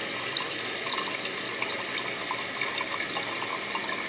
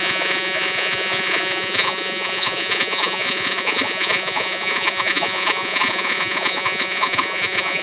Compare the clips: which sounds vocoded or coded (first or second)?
second